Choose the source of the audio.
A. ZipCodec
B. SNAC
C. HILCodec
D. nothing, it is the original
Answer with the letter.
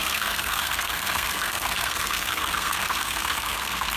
B